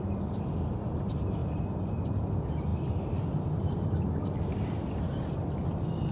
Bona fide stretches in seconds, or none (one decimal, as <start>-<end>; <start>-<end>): 0.0-6.1